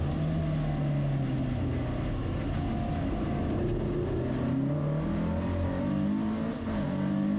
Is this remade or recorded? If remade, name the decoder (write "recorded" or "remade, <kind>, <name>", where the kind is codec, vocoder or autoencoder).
recorded